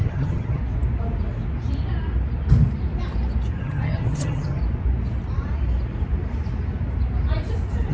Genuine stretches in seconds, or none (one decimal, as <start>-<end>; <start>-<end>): 0.6-3.6; 4.6-7.9

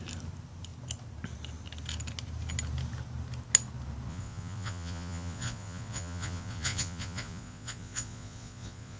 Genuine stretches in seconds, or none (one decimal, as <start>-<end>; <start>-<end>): 0.0-4.1

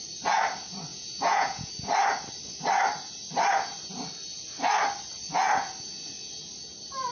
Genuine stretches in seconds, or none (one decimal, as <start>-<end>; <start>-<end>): 0.0-0.9; 1.7-7.1

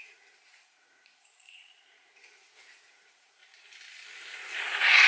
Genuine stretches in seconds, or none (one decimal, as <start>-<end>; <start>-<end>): 3.4-4.6

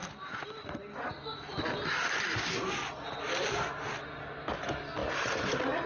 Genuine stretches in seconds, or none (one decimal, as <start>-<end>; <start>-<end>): 0.0-5.9

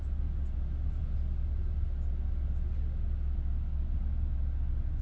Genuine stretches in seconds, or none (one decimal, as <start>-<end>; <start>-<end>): 0.0-5.0

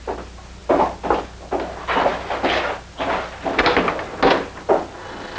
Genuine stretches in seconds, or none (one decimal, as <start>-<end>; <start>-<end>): 0.0-5.4